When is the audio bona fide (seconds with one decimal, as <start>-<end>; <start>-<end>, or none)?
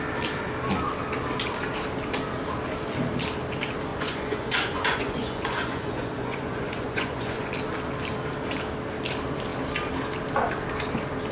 0.0-3.9; 7.5-11.3